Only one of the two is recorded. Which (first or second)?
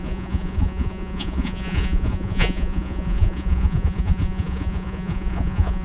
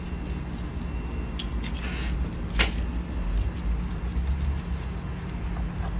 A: second